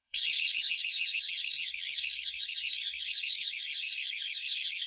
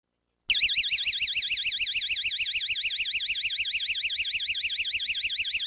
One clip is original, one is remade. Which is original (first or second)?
second